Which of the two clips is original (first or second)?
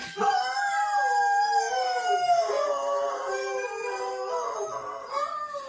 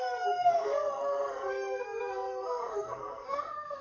first